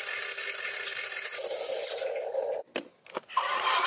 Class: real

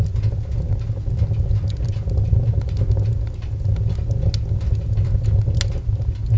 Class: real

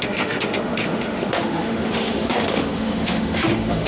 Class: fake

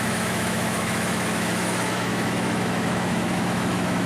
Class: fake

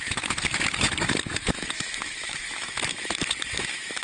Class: fake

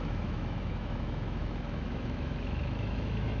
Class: fake